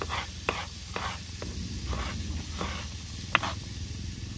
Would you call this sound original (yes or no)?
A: yes